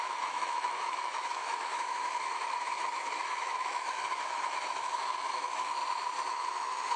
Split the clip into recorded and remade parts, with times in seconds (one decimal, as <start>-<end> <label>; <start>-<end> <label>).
0.0-5.8 remade; 5.8-6.3 recorded; 6.3-7.0 remade